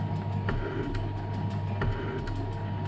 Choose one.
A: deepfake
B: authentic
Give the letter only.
B